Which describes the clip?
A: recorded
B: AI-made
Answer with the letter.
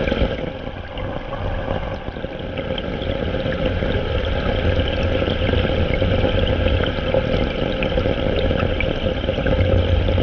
A